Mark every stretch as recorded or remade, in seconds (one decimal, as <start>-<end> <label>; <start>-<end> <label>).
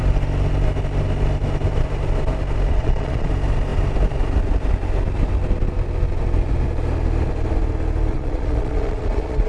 0.0-2.7 recorded; 2.7-3.3 remade; 3.3-8.1 recorded; 8.1-9.5 remade